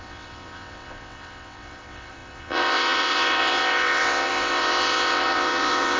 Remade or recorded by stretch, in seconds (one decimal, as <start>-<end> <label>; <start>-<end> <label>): 0.0-6.0 remade